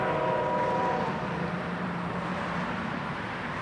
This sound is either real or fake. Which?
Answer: fake